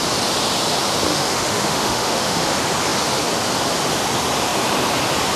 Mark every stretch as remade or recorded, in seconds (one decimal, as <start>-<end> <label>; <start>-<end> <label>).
0.0-1.1 recorded; 1.1-2.5 remade; 2.5-5.4 recorded